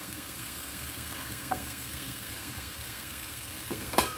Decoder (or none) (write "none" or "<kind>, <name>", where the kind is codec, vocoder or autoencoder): codec, SNAC